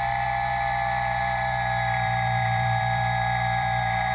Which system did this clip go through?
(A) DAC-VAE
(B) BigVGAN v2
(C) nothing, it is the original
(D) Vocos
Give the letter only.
B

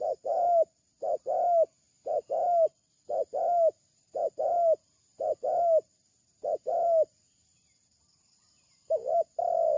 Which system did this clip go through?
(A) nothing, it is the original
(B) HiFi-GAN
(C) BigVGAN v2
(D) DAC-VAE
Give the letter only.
A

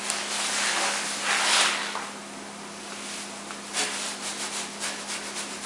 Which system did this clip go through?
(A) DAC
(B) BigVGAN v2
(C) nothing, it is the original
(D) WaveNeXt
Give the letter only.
C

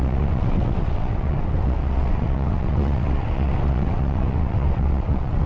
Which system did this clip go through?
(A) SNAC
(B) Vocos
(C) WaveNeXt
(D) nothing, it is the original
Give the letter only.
C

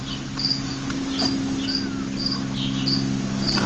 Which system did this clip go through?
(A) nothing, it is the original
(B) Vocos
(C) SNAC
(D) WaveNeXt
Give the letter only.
A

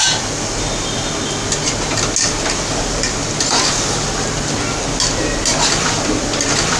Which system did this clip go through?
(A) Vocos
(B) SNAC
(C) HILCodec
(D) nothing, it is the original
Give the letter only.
D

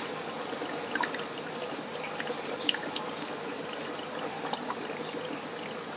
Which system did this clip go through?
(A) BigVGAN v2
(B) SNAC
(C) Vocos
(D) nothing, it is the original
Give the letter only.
D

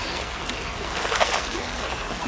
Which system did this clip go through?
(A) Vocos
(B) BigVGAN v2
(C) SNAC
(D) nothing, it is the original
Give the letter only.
C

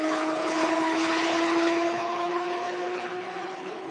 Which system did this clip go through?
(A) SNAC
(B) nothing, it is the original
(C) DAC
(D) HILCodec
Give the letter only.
D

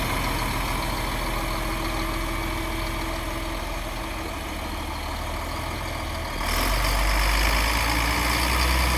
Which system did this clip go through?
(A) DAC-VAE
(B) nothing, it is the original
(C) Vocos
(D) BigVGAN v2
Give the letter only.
B